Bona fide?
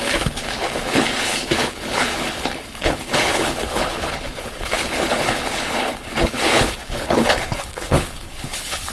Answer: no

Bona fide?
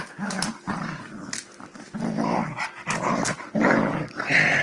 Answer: yes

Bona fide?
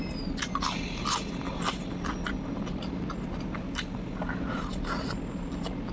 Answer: yes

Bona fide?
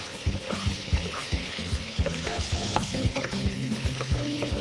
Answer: no